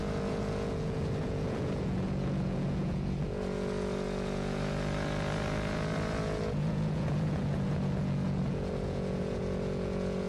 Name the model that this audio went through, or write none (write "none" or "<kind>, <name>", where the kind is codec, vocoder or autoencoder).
vocoder, Vocos